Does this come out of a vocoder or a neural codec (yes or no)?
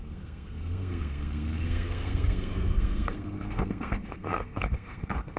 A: yes